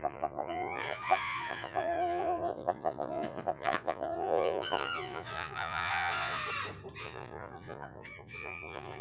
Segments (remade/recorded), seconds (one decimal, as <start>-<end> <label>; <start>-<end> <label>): 0.0-6.4 remade; 6.4-7.0 recorded; 7.0-9.0 remade